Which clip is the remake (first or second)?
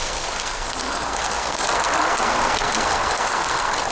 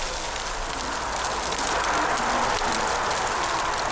first